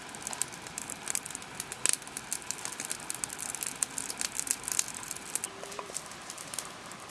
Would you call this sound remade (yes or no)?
no